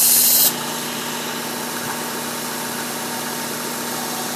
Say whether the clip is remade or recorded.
recorded